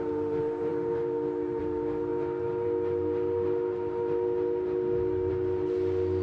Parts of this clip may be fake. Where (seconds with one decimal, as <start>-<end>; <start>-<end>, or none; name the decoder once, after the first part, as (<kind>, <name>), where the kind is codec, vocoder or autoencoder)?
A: none